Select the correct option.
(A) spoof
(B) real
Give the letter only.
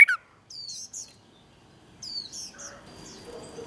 B